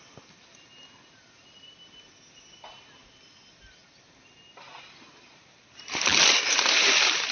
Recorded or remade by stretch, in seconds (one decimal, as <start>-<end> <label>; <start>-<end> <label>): 0.0-7.3 recorded